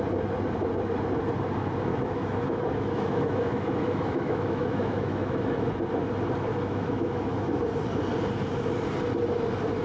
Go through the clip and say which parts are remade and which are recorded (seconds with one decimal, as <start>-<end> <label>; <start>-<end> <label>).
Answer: 0.0-1.9 recorded; 1.9-5.7 remade; 5.7-6.5 recorded; 6.5-7.6 remade; 7.6-9.8 recorded